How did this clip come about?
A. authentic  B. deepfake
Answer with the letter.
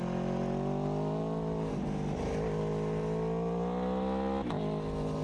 A